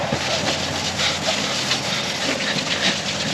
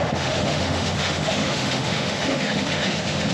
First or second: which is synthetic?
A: second